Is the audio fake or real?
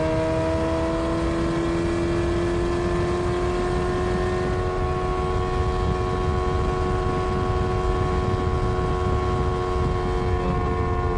real